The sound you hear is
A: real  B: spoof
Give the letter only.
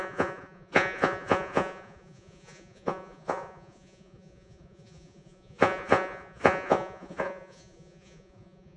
B